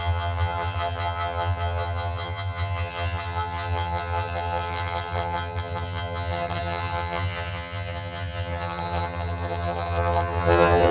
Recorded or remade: remade